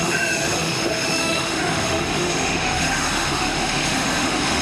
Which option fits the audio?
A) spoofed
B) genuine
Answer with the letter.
A